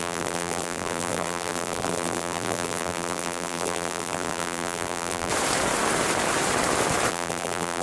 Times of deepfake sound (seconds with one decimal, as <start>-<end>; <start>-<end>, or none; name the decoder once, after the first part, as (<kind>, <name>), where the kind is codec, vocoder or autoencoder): 0.0-5.3 (vocoder, BigVGAN v2); 7.1-7.8